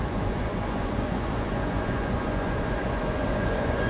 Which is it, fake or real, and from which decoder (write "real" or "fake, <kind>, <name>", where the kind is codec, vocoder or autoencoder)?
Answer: fake, vocoder, Vocos